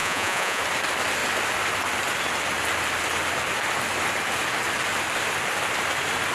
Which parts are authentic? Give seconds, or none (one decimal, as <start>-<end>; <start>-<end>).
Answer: 0.6-6.3